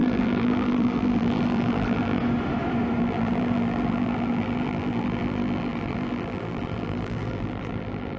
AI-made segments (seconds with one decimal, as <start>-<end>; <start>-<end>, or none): 0.0-2.2; 3.0-8.2